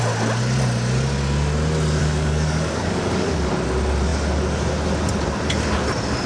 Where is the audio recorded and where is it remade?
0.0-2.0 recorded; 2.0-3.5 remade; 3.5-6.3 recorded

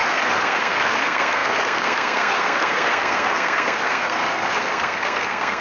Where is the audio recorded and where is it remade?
0.0-5.6 remade

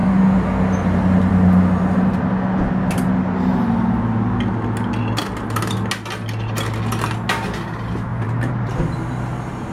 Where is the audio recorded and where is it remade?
0.0-8.1 recorded; 8.1-8.8 remade; 8.8-9.7 recorded

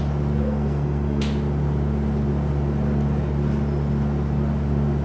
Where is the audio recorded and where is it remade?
0.0-0.4 recorded; 0.4-1.2 remade; 1.2-5.0 recorded